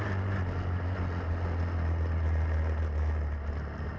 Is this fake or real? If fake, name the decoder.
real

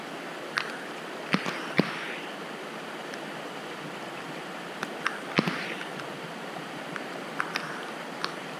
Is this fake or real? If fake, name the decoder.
fake, vocoder, BigVGAN v2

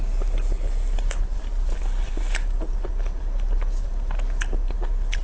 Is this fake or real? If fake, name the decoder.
real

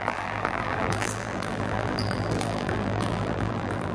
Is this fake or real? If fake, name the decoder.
fake, vocoder, BigVGAN v2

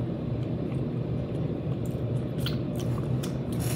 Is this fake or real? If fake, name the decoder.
fake, vocoder, BigVGAN v2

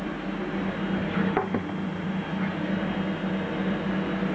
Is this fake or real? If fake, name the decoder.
real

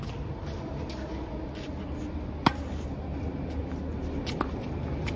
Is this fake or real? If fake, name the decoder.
real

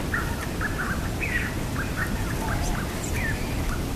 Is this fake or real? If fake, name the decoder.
fake, vocoder, BigVGAN v2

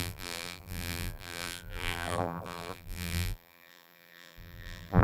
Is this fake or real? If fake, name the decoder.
fake, vocoder, BigVGAN v2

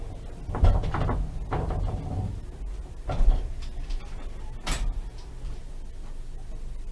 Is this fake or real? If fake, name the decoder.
real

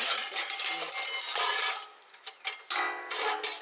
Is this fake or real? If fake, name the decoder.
real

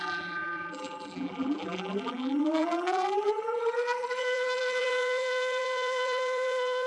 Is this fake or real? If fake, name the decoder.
fake, vocoder, BigVGAN v2